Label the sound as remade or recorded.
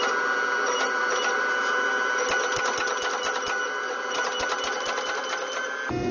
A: recorded